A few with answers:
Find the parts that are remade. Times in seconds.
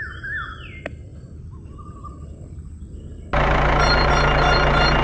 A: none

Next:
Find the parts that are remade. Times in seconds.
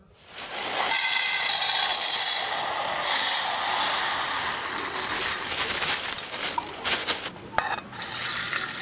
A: 6.7-7.3 (vocoder, Vocos)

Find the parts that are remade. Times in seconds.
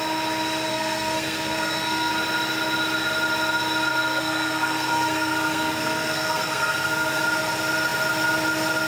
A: 0.7-2.1 (codec, SNAC); 3.9-7.2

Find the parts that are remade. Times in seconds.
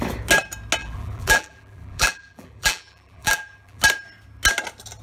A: 0.8-3.8 (vocoder, BigVGAN v2)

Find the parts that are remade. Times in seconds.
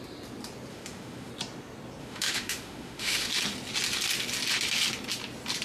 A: 0.7-1.3 (autoencoder, DAC-VAE); 2.0-3.3